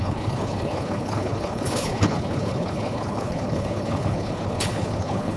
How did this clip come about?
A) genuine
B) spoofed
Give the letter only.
B